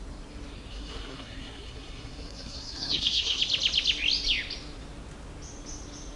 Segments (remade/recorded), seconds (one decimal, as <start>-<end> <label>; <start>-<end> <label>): 0.0-0.7 recorded; 0.7-3.4 remade; 3.4-6.2 recorded

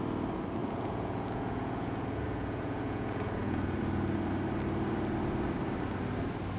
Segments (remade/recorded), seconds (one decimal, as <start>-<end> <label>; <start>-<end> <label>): 0.0-0.6 recorded; 0.6-3.8 remade; 3.8-6.6 recorded

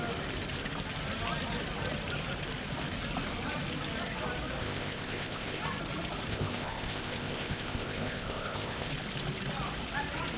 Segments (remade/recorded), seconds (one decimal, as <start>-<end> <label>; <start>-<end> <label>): 0.0-4.6 recorded; 4.6-5.6 remade; 5.6-6.3 recorded; 6.3-8.9 remade; 8.9-10.4 recorded

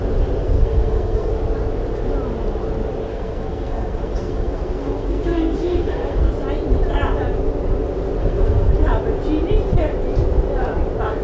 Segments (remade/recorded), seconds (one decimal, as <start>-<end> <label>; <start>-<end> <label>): 0.0-0.4 recorded; 0.4-1.3 remade; 1.3-3.1 recorded; 3.1-6.3 remade; 6.3-8.2 recorded; 8.2-8.7 remade; 8.7-11.2 recorded